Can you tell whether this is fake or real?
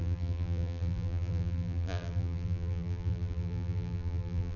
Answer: fake